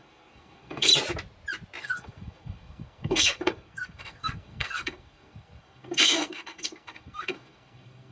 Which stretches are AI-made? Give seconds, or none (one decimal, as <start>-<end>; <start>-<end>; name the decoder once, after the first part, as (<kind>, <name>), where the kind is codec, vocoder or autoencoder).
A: 0.0-0.9 (codec, SNAC); 1.8-8.1